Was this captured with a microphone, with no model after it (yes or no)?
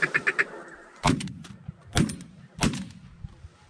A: yes